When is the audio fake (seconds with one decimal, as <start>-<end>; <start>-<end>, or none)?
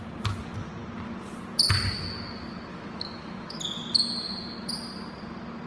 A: 2.7-3.6